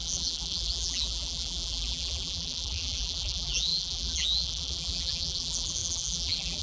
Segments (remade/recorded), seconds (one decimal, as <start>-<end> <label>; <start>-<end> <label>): 0.0-6.6 remade